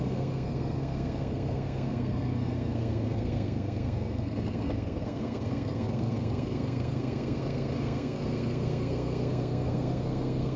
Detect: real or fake fake